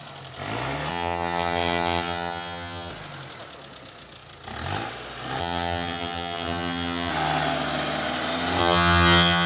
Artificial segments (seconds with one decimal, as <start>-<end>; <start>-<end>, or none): 0.9-2.9; 5.4-7.1; 8.6-9.5